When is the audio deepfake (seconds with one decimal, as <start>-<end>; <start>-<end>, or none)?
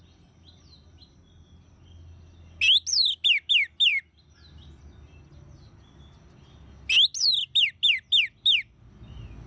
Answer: none